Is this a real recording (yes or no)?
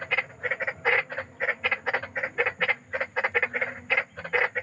yes